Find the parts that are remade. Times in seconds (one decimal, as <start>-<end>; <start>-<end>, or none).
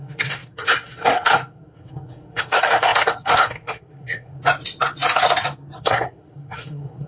0.0-4.4; 5.8-7.1